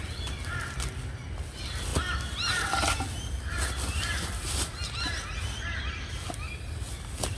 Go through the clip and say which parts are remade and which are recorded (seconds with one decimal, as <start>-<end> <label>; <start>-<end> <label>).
0.0-7.4 recorded